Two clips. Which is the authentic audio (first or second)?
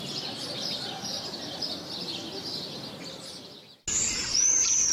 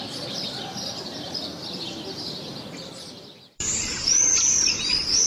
first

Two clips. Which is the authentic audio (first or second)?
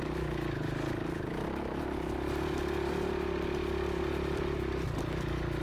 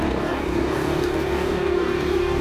first